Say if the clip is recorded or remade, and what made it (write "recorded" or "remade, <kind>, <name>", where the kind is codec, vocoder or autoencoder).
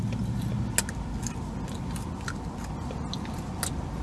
recorded